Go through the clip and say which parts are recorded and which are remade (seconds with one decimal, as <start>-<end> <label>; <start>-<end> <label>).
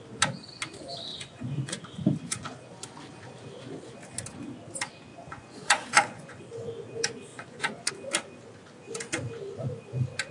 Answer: 0.0-1.1 recorded; 1.1-2.6 remade; 2.6-5.1 recorded; 5.1-6.4 remade; 6.4-7.3 recorded; 7.3-7.9 remade; 7.9-10.3 recorded